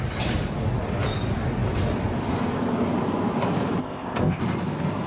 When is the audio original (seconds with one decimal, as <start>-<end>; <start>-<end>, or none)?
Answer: 0.0-3.8; 4.4-5.1